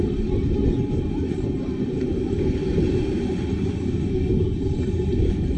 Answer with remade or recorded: remade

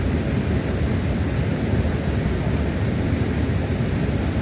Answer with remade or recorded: recorded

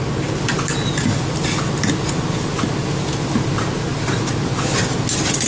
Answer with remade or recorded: recorded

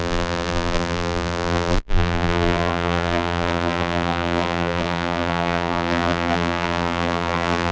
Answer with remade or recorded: remade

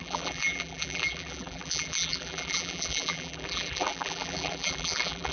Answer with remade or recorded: remade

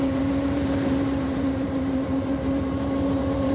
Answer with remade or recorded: remade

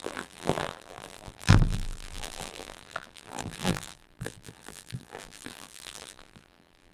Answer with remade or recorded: remade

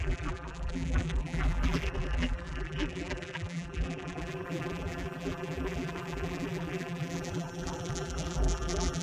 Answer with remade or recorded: remade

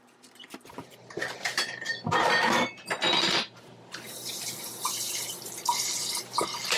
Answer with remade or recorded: remade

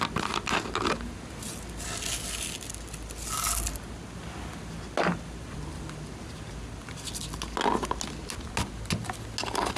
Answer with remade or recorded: recorded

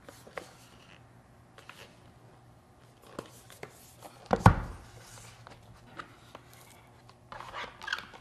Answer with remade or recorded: recorded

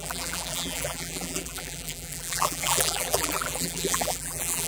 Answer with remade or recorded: remade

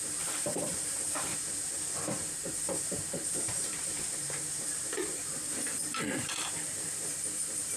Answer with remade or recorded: remade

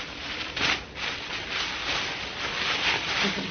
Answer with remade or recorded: recorded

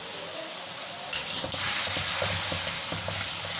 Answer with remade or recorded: recorded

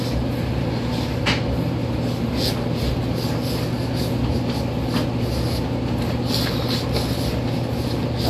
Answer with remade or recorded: recorded